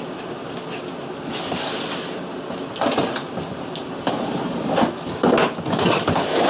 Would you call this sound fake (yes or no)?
no